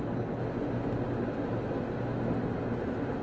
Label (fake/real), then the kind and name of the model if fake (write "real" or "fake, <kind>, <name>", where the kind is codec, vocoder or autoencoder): real